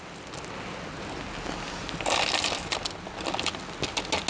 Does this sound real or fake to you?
real